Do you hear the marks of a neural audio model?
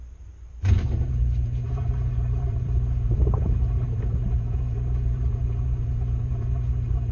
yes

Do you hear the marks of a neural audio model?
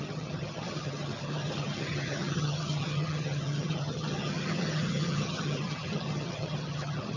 yes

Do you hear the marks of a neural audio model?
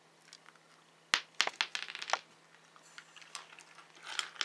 no